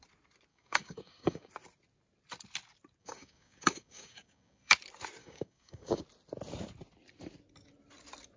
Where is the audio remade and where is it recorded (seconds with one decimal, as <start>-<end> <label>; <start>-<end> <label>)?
0.0-0.5 recorded; 0.5-1.5 remade; 1.5-3.0 recorded; 3.0-4.7 remade; 4.7-5.2 recorded; 5.2-6.0 remade; 6.0-8.4 recorded